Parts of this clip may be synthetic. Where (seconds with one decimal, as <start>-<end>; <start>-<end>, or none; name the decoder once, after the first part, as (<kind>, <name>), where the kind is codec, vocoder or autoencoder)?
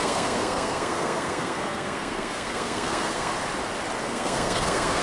0.0-3.3 (codec, SNAC); 4.0-5.0